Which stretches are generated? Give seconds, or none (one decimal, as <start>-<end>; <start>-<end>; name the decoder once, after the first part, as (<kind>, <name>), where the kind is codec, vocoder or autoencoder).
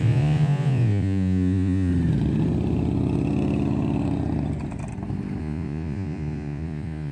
0.0-1.9 (vocoder, Vocos); 5.4-7.1